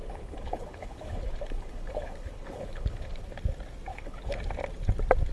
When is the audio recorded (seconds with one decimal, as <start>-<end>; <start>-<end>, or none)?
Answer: 3.2-3.9; 4.4-5.3